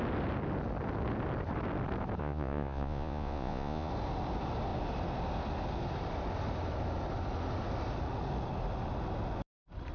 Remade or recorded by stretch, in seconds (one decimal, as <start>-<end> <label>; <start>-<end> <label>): 0.0-2.2 recorded; 2.2-3.9 remade; 3.9-9.9 recorded